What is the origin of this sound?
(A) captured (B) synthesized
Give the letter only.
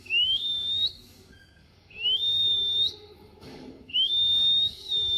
B